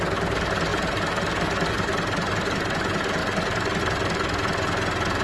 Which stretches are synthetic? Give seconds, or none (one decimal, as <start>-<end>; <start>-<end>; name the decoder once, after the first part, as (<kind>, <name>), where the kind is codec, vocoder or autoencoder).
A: none